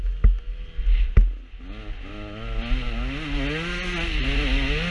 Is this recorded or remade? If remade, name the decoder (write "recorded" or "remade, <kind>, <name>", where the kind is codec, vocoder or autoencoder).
recorded